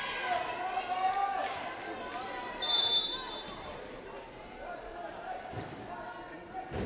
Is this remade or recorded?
recorded